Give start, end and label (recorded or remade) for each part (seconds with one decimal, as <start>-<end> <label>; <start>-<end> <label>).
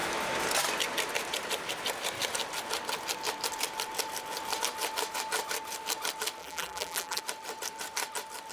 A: 0.0-6.4 recorded; 6.4-7.2 remade; 7.2-8.5 recorded